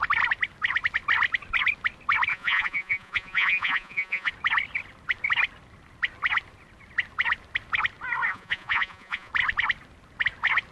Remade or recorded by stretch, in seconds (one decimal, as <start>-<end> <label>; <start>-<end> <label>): 0.0-2.3 recorded; 2.3-4.3 remade; 4.3-8.3 recorded; 8.3-9.3 remade; 9.3-10.7 recorded